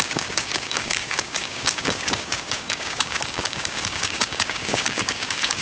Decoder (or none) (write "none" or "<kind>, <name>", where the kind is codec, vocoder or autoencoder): codec, DAC